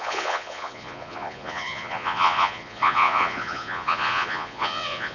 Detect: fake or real fake